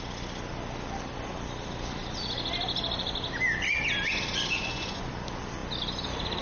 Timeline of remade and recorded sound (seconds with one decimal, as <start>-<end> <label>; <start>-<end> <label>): 0.0-4.6 recorded; 4.6-5.1 remade; 5.1-6.4 recorded